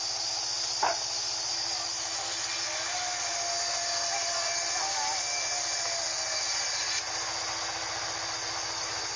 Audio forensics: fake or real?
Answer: real